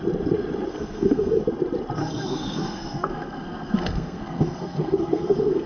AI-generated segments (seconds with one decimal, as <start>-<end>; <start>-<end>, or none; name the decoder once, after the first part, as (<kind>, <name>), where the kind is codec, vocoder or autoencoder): 0.7-1.4 (codec, SNAC); 2.0-5.7